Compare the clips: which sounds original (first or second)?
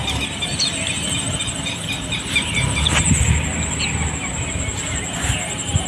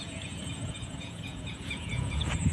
first